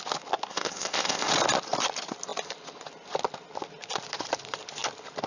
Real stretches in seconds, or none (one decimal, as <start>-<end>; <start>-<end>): 0.0-0.5; 1.3-5.3